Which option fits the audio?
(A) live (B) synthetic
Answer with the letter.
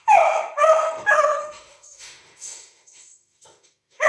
B